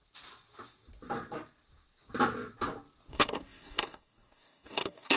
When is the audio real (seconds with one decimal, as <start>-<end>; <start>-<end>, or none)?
0.0-3.1